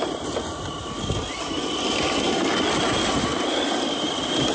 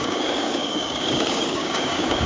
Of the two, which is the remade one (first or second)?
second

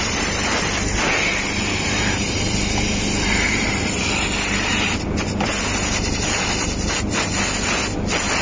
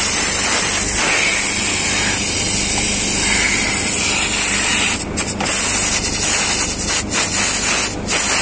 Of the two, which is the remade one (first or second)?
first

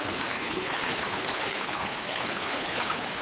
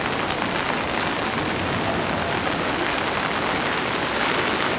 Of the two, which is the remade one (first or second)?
first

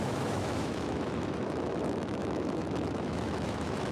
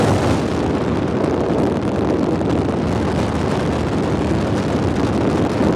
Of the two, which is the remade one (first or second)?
first